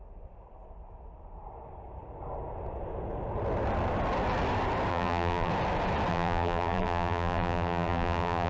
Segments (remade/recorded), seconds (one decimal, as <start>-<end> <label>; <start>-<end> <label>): 0.0-4.9 recorded; 4.9-5.5 remade; 5.5-6.1 recorded; 6.1-8.5 remade